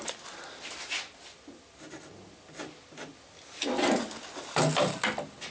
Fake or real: real